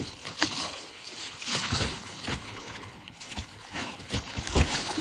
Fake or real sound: fake